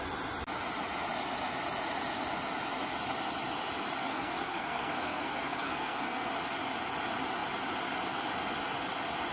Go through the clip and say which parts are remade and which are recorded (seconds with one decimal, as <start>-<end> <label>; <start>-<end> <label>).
0.0-4.0 recorded; 4.0-6.3 remade; 6.3-9.3 recorded